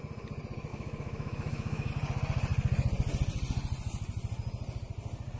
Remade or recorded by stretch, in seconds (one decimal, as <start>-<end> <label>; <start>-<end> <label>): 0.0-0.7 recorded; 0.7-1.9 remade; 1.9-5.4 recorded